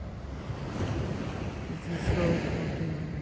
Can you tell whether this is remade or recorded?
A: remade